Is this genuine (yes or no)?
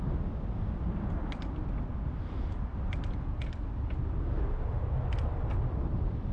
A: yes